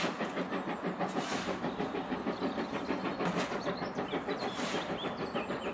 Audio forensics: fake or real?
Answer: real